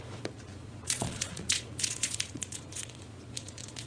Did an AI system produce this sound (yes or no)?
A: yes